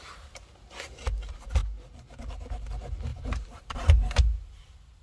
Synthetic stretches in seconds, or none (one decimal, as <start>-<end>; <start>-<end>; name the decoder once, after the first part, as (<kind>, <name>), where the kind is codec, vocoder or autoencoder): 3.1-4.3 (vocoder, BigVGAN v2)